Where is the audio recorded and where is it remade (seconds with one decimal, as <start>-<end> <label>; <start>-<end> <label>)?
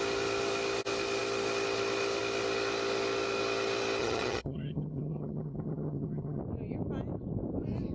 0.0-4.0 recorded; 4.0-6.4 remade; 6.4-7.9 recorded